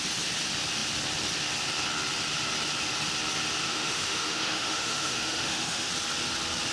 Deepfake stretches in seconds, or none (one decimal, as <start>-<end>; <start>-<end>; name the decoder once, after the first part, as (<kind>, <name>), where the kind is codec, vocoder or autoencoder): 3.6-5.9 (autoencoder, DAC-VAE)

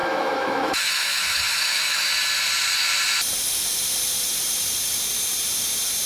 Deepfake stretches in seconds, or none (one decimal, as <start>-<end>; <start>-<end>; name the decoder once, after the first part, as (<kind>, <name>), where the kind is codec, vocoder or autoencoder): 0.0-2.1 (autoencoder, DAC-VAE)

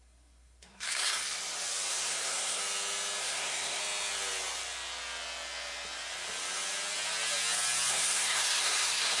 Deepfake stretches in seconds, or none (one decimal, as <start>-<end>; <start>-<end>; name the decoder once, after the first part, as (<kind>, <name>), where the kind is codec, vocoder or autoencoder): 0.0-1.2 (codec, SNAC); 1.9-2.6; 3.2-3.8; 7.9-9.2

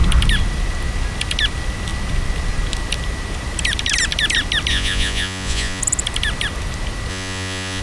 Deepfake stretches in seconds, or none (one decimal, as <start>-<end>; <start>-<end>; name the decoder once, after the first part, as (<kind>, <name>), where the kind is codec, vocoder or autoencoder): 4.7-5.8 (vocoder, Vocos); 7.1-7.8